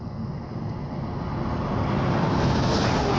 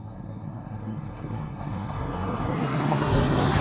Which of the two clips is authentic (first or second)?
first